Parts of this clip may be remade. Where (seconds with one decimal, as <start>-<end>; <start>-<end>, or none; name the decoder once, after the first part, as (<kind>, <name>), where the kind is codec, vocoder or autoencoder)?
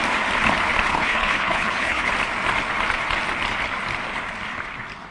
0.9-2.1 (codec, HILCodec)